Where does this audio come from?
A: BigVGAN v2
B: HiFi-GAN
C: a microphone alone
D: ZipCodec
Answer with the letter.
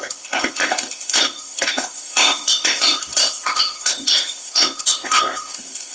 D